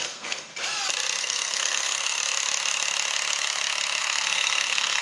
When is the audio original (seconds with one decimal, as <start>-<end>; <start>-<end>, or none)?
0.5-1.2; 2.2-4.0